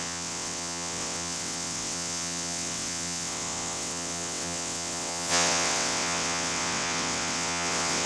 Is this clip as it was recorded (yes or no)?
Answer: no